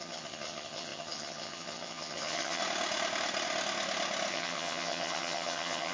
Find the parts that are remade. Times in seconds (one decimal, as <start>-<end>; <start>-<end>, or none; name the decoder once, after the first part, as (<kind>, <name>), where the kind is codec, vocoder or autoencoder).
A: 0.0-2.6 (vocoder, HiFi-GAN); 4.3-5.9